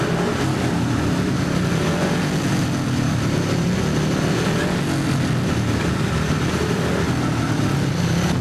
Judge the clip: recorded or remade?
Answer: recorded